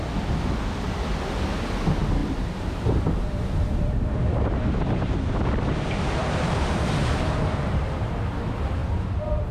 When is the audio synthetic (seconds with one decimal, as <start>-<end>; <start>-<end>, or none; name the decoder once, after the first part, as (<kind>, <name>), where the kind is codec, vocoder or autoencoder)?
2.2-4.4 (vocoder, BigVGAN v2); 6.2-8.1